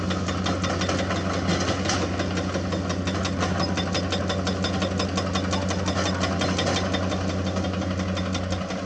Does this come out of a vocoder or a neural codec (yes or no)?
no